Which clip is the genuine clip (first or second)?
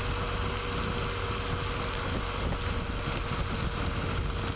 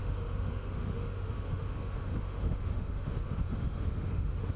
first